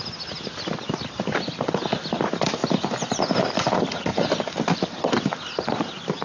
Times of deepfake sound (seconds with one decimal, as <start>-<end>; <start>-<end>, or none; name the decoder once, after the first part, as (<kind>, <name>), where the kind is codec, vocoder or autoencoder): 4.1-5.0 (vocoder, BigVGAN v2)